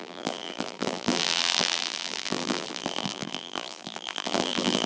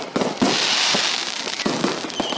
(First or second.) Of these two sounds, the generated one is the first